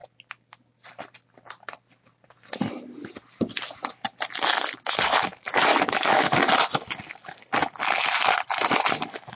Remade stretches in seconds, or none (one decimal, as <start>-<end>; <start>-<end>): 5.7-6.4